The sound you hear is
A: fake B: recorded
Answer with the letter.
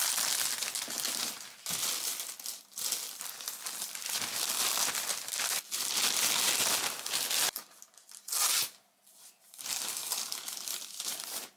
B